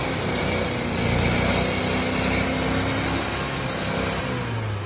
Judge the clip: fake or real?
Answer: real